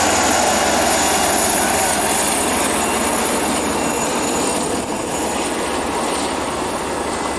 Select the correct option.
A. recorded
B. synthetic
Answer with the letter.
A